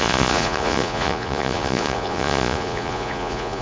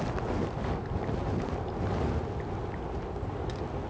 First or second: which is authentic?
second